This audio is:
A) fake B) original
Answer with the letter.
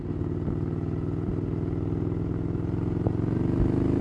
B